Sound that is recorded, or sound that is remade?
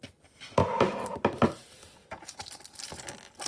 recorded